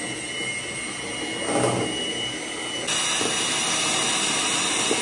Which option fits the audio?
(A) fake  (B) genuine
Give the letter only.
B